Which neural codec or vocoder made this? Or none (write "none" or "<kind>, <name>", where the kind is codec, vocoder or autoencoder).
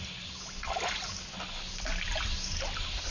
none